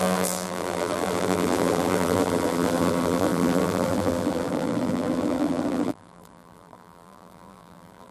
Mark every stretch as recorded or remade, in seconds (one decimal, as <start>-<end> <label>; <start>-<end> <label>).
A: 0.0-8.1 remade